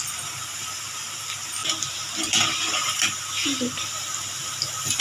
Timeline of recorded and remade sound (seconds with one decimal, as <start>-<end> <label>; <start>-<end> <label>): 0.0-5.0 recorded